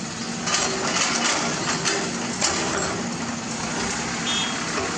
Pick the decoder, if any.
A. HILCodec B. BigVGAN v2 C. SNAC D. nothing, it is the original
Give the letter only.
D